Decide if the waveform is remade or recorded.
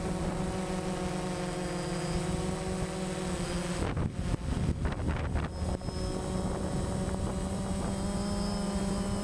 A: recorded